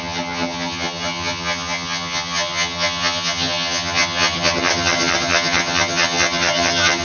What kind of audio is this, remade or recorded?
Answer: remade